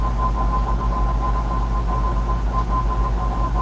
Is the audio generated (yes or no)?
no